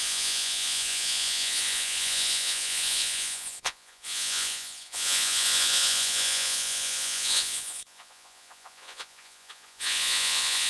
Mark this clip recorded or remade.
remade